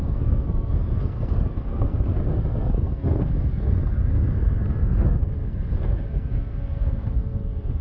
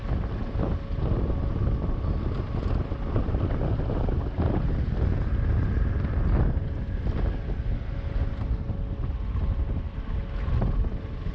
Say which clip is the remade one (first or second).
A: first